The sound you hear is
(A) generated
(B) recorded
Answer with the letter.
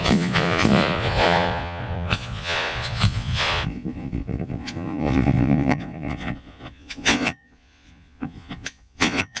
A